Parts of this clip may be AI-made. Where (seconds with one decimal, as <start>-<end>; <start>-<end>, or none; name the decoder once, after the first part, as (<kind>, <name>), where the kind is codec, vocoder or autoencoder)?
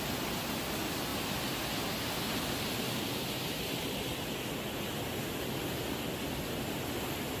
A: none